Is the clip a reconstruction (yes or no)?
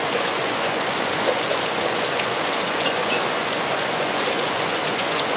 yes